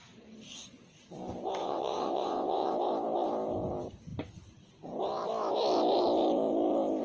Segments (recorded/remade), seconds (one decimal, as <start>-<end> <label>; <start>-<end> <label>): 0.0-1.6 recorded; 1.6-2.7 remade; 2.7-7.0 recorded